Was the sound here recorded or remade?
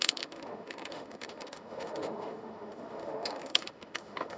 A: remade